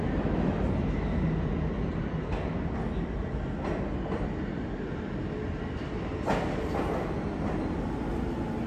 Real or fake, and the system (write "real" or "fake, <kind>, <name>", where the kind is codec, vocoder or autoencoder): real